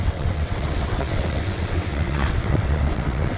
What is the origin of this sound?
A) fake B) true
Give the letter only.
A